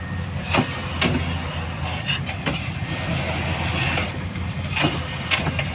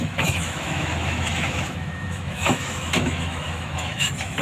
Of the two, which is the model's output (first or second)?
second